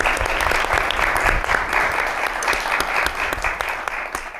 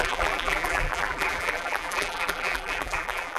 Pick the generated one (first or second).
second